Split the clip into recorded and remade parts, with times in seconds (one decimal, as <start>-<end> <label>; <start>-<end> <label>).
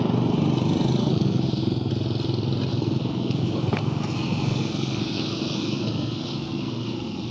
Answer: 0.0-1.0 recorded; 1.0-1.9 remade; 1.9-2.7 recorded; 2.7-7.3 remade